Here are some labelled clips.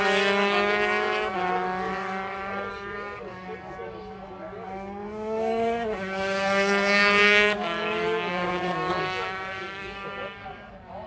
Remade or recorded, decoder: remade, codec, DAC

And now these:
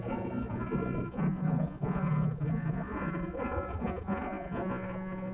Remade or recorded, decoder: remade, vocoder, Vocos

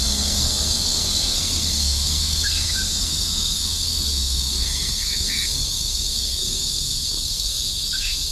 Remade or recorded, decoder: remade, codec, SNAC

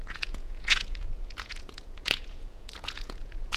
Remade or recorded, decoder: remade, vocoder, Vocos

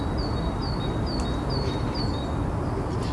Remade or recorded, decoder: recorded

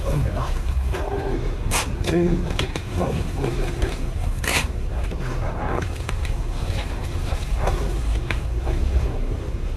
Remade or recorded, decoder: remade, codec, SNAC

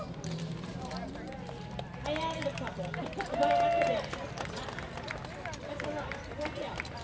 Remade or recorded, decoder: recorded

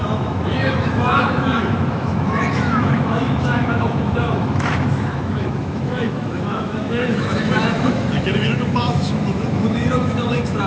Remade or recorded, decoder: remade, autoencoder, DAC-VAE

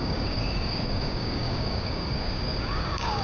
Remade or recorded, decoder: remade, codec, DAC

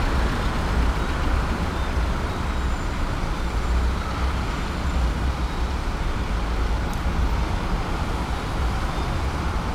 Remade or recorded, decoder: recorded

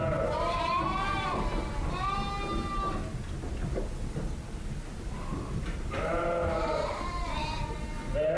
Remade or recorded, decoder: recorded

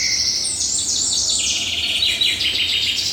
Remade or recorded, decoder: recorded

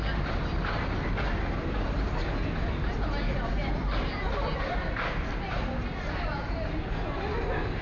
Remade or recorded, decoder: recorded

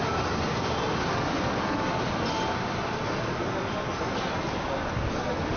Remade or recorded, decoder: recorded